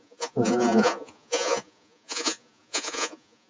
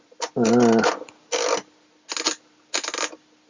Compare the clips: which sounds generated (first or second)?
first